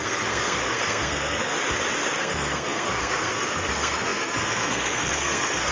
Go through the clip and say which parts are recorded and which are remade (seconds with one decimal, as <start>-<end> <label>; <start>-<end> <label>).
0.0-1.5 remade; 1.5-2.2 recorded; 2.2-5.7 remade